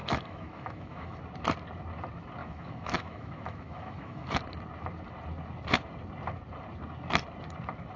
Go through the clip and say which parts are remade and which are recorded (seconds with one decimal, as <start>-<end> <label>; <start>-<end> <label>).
0.0-1.2 remade; 1.2-2.4 recorded; 2.4-4.4 remade; 4.4-8.0 recorded